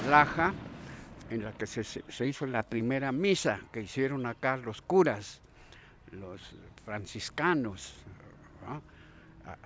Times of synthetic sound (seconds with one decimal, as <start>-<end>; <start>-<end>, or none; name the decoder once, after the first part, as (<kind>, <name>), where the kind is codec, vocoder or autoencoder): 2.0-2.8 (codec, SNAC)